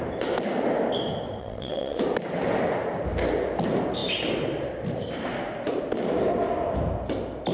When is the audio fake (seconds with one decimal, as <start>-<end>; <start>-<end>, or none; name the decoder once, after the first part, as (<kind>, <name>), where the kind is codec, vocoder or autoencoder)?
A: 1.4-2.0 (vocoder, WaveNeXt)